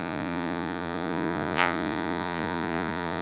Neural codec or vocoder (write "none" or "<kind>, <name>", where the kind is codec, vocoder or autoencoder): vocoder, Vocos